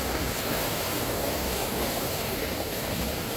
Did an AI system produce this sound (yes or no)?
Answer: yes